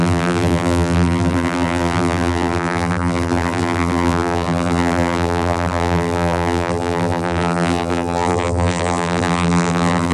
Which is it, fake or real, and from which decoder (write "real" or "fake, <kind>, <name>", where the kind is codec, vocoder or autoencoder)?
fake, vocoder, BigVGAN v2